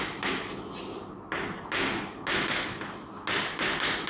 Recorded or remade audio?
recorded